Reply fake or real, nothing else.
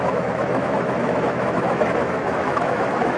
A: fake